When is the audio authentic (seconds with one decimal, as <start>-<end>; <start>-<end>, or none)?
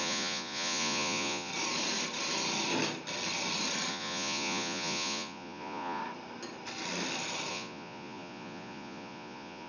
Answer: 1.5-3.9; 6.0-7.5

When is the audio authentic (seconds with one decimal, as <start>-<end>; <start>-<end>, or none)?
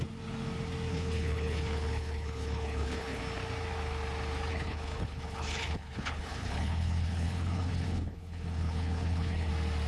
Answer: 0.0-0.9; 3.2-4.5; 9.5-9.9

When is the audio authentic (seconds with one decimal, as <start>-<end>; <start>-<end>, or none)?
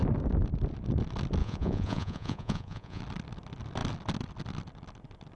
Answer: 0.0-1.4; 3.0-5.3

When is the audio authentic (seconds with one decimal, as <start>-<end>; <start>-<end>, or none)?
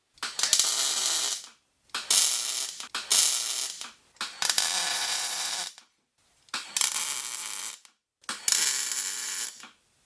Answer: 0.0-4.9; 5.5-10.0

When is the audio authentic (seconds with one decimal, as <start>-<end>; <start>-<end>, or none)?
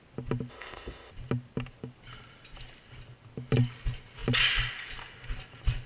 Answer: 0.0-0.5; 1.1-5.9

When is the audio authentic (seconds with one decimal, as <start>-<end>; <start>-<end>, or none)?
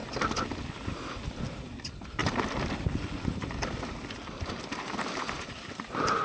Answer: 0.0-2.2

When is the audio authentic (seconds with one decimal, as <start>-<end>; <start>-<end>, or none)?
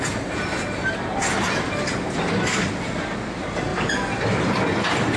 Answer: 0.0-5.2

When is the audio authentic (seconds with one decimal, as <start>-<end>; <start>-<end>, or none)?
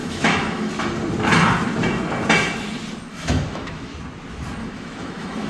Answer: 0.7-3.1; 3.9-4.6